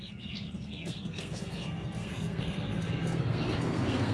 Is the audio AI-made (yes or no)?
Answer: yes